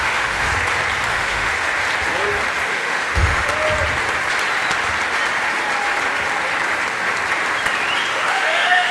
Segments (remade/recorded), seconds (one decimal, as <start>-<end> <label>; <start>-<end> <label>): 0.0-0.5 remade; 0.5-1.1 recorded; 1.1-1.5 remade; 1.5-2.7 recorded; 2.7-3.5 remade; 3.5-8.1 recorded; 8.1-8.9 remade